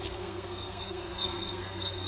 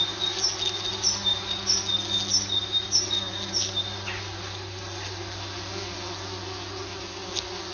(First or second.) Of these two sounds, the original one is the second